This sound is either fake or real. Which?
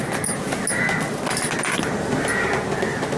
real